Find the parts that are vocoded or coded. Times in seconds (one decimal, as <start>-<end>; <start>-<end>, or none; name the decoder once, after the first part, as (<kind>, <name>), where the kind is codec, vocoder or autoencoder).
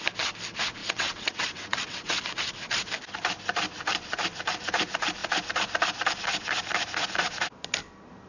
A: 0.8-2.2 (vocoder, WaveNeXt)